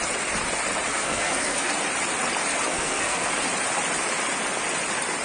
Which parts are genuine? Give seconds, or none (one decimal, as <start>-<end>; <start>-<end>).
0.0-0.9; 1.7-2.7; 3.3-5.2